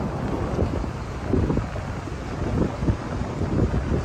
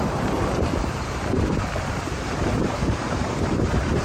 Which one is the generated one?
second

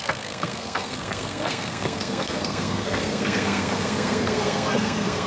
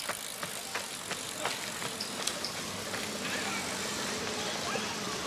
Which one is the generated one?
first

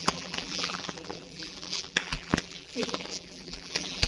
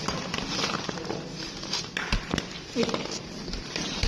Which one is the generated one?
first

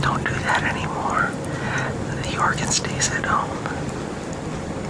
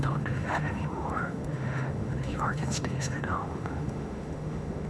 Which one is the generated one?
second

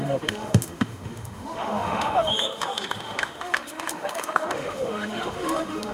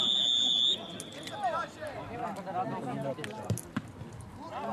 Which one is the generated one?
first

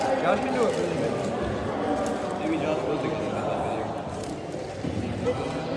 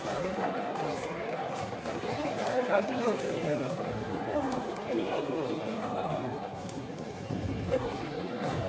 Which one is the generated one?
second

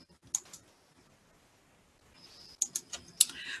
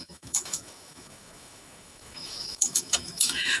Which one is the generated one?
second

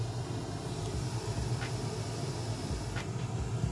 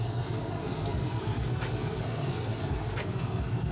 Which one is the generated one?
second